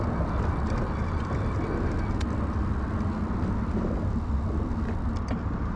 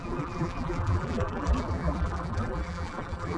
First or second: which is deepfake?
second